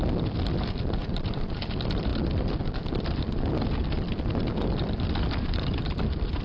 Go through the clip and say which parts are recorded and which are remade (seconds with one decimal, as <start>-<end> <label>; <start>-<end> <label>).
0.0-1.0 recorded; 1.0-1.6 remade; 1.6-6.4 recorded